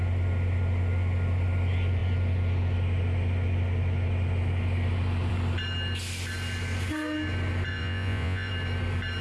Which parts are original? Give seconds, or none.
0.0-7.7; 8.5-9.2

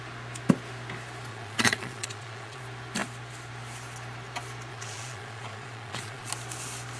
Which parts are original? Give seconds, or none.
0.0-1.3; 2.6-4.7; 6.3-7.0

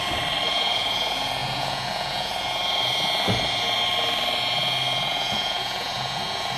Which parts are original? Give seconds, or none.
0.0-0.5; 2.3-5.1

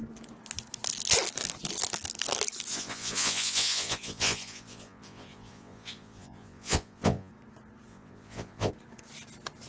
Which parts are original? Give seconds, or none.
0.0-2.7; 7.3-7.9; 8.7-9.7

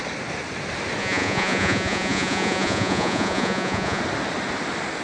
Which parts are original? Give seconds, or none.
0.0-1.0; 4.0-5.0